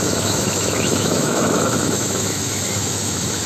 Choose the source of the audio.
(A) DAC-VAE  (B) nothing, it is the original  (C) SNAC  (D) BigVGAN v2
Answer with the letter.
A